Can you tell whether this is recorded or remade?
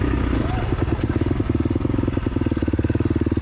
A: recorded